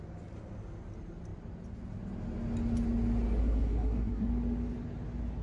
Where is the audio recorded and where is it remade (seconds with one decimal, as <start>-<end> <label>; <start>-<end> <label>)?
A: 0.0-3.4 recorded; 3.4-4.3 remade; 4.3-5.4 recorded